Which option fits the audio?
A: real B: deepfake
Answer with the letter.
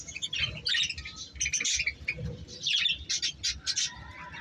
A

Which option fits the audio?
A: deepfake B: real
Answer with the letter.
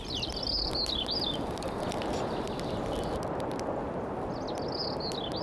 B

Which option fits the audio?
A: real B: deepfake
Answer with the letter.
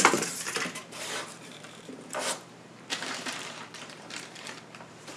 B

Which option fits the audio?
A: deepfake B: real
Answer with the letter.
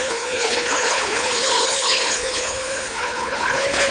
A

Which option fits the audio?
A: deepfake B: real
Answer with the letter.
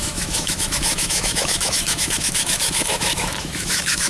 A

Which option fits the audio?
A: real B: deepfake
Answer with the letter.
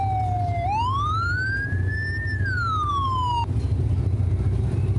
A